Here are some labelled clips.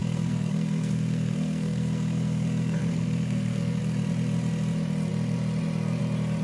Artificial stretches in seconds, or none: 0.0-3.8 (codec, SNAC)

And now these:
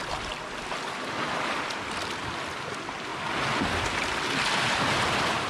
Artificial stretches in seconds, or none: none

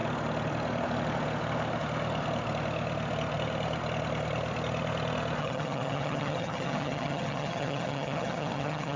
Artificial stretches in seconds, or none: 5.4-9.0 (vocoder, HiFi-GAN)

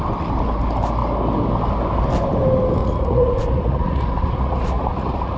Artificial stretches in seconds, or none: 2.8-5.4 (vocoder, Vocos)